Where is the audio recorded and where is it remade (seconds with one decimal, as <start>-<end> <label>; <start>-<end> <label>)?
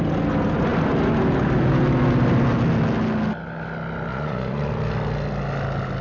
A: 0.0-4.1 recorded; 4.1-4.7 remade; 4.7-6.0 recorded